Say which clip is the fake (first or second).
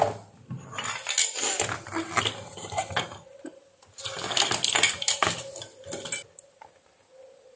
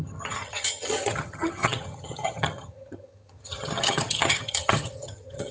second